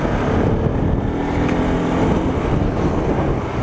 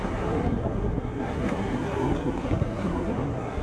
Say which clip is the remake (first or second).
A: second